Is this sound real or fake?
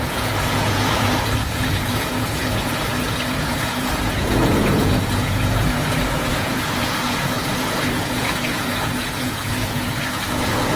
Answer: fake